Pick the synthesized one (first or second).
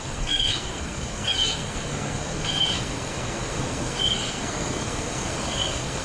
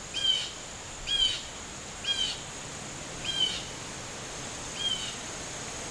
first